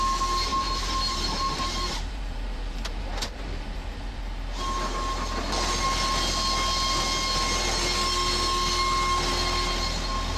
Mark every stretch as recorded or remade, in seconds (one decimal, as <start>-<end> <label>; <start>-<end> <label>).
0.0-0.5 recorded; 0.5-4.2 remade; 4.2-10.4 recorded